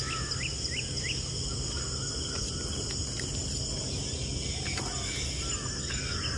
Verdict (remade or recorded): recorded